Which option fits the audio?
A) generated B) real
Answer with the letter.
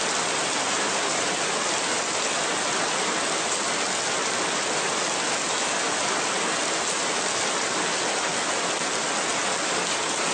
B